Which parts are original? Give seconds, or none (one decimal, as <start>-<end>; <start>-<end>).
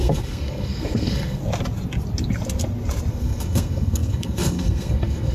1.4-3.1